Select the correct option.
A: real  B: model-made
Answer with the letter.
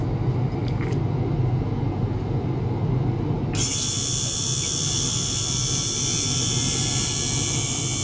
A